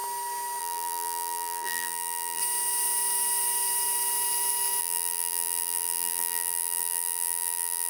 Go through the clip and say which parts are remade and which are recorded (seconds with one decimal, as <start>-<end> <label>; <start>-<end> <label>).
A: 0.0-0.6 recorded; 0.6-2.4 remade; 2.4-4.8 recorded; 4.8-7.9 remade